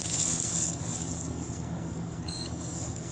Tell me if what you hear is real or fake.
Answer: fake